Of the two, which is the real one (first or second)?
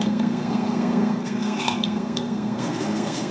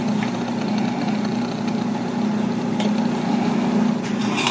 second